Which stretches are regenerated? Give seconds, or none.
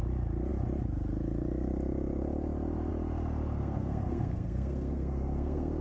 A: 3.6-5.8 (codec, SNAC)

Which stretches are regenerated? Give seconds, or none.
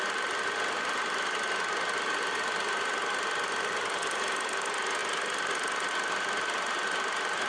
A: none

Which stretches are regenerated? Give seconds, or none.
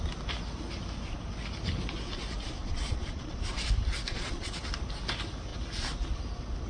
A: 2.6-3.4 (vocoder, Vocos); 4.1-4.6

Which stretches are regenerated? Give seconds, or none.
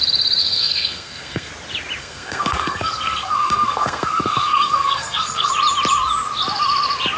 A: 0.4-1.5 (codec, SNAC); 2.0-5.5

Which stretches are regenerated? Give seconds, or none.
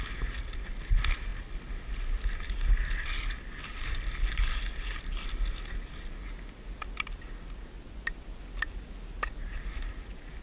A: none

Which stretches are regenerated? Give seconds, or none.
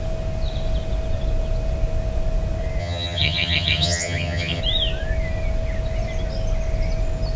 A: 2.8-4.6 (vocoder, HiFi-GAN)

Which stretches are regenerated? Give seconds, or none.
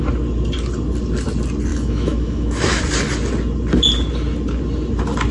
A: 1.7-2.8 (autoencoder, DAC-VAE)